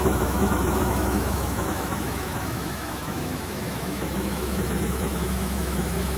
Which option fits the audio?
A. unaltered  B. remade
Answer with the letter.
B